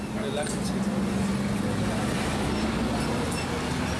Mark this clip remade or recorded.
recorded